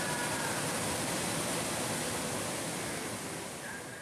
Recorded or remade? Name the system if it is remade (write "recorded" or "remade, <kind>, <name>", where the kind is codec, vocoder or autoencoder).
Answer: recorded